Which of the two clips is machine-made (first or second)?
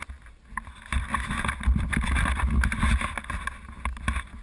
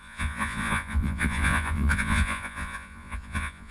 second